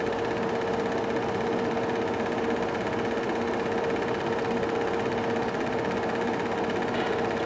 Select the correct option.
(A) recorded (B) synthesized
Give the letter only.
A